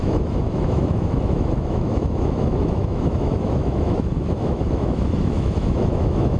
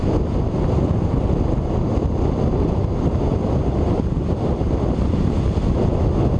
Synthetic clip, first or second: first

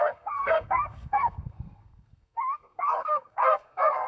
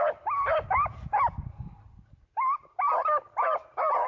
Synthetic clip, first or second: first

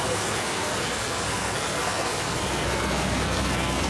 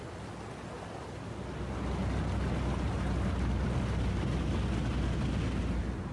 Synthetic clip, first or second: first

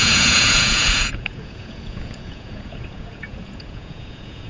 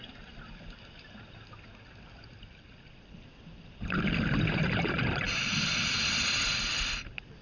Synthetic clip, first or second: first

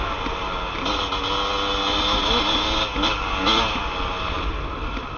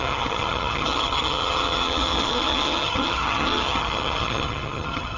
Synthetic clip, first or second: second